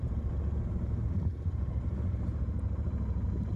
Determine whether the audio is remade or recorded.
recorded